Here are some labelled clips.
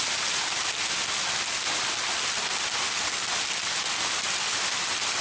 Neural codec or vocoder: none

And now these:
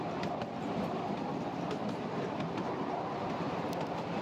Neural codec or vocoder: none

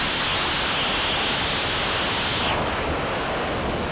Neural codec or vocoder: none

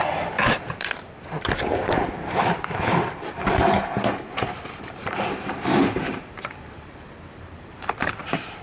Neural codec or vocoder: vocoder, BigVGAN v2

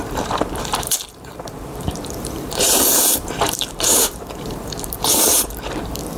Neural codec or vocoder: vocoder, BigVGAN v2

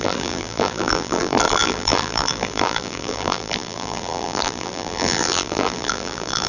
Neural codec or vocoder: vocoder, BigVGAN v2